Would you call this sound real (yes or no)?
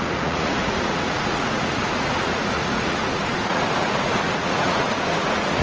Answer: no